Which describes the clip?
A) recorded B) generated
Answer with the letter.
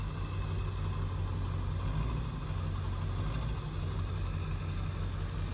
A